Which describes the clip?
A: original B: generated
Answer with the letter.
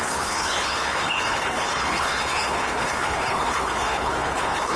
B